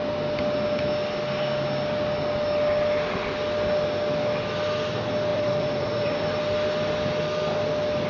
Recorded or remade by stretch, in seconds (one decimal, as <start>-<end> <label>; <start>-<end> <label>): 0.0-5.3 recorded; 5.3-6.4 remade; 6.4-8.1 recorded

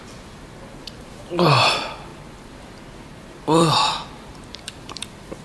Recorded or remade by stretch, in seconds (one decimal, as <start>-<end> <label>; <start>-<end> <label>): 0.0-4.3 recorded; 4.3-5.0 remade; 5.0-5.4 recorded

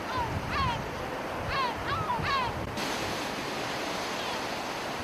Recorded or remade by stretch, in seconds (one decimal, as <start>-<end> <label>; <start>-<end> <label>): 0.0-2.1 recorded; 2.1-3.5 remade; 3.5-5.0 recorded

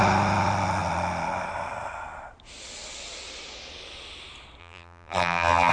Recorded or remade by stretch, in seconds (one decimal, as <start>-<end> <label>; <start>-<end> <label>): 0.0-4.6 recorded; 4.6-5.7 remade

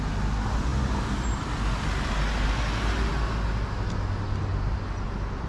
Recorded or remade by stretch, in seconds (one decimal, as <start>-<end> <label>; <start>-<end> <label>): 0.0-5.5 recorded

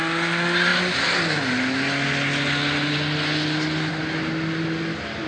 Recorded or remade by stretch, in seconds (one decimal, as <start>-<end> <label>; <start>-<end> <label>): 0.0-5.3 recorded

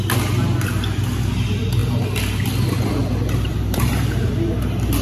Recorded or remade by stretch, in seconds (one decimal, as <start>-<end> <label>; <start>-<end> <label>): 0.0-3.5 recorded; 3.5-4.3 remade; 4.3-5.0 recorded

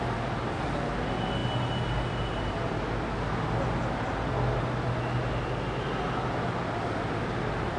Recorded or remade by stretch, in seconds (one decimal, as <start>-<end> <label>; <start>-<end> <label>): 0.0-7.8 recorded